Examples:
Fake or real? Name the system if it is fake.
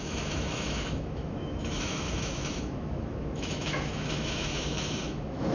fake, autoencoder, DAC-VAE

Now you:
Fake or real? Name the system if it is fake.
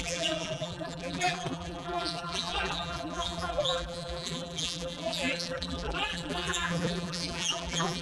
fake, vocoder, BigVGAN v2